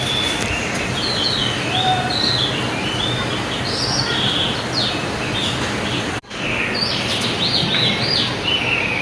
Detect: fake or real real